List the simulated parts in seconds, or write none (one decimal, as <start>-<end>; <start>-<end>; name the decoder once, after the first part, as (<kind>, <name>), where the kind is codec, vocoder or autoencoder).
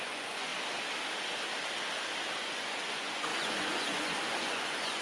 0.0-0.5 (vocoder, Vocos); 2.4-5.0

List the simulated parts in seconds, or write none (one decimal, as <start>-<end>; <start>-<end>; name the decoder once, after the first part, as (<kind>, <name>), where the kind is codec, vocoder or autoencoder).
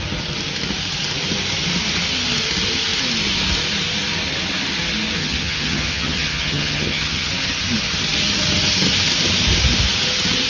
5.2-7.3 (vocoder, HiFi-GAN)